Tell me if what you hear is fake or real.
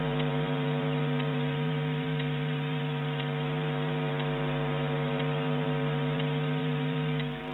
fake